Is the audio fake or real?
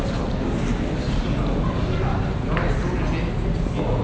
real